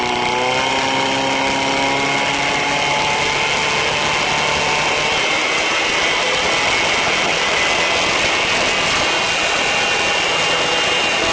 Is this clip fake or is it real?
real